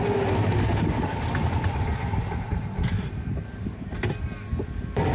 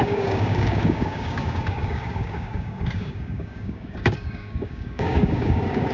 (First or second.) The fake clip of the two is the second